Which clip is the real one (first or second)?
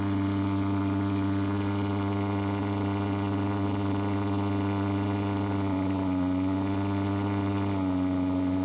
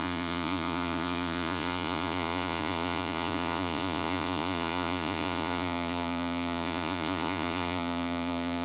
first